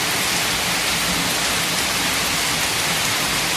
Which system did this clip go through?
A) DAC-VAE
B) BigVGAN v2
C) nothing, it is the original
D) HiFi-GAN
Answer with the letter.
C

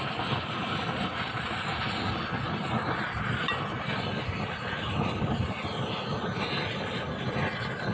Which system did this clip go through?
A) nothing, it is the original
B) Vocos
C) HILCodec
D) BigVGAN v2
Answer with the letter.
A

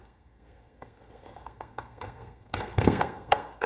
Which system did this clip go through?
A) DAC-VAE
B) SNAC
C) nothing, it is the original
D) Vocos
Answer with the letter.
B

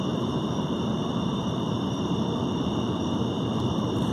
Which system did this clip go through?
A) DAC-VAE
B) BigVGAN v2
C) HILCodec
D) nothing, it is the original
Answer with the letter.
B